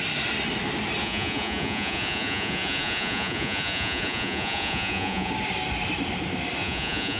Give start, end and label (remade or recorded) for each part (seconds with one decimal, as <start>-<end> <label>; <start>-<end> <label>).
0.0-1.0 recorded; 1.0-5.3 remade; 5.3-6.6 recorded; 6.6-7.2 remade